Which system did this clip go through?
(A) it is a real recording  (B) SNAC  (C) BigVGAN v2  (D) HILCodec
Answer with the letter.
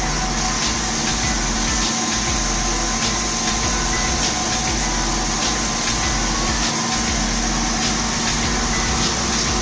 A